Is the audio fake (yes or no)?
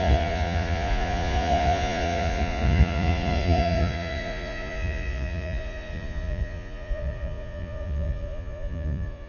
yes